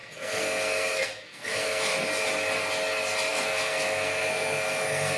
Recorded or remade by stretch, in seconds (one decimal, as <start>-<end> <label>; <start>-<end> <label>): 0.0-1.9 remade; 1.9-3.3 recorded; 3.3-5.2 remade